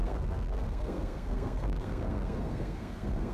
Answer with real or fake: fake